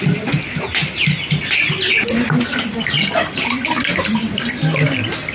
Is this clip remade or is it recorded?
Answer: recorded